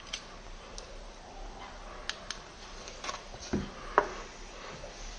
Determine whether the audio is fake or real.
real